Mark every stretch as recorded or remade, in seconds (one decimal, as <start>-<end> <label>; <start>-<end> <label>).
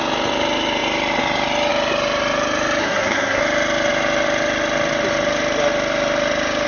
0.0-2.8 recorded; 2.8-3.4 remade; 3.4-6.7 recorded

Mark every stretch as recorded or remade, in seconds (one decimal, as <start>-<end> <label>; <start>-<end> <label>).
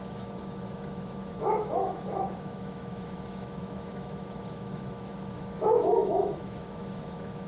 0.0-7.5 remade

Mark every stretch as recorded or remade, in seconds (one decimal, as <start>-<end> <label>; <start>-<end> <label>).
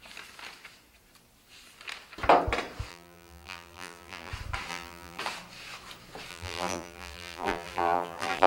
0.0-2.9 recorded; 2.9-4.3 remade; 4.3-4.7 recorded; 4.7-5.2 remade; 5.2-6.3 recorded; 6.3-8.5 remade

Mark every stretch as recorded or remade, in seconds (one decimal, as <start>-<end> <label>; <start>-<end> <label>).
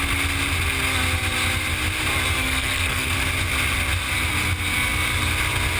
0.0-2.4 recorded; 2.4-3.1 remade; 3.1-5.8 recorded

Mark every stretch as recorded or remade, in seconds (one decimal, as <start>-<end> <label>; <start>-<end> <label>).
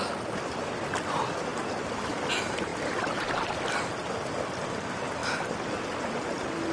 0.0-6.7 recorded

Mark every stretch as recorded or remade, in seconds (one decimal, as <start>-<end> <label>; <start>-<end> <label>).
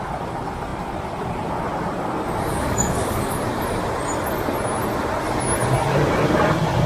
0.0-2.5 recorded; 2.5-3.4 remade; 3.4-6.9 recorded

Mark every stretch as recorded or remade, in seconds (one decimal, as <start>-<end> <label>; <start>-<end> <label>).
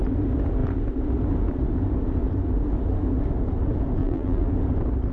0.0-4.0 recorded; 4.0-4.5 remade; 4.5-5.1 recorded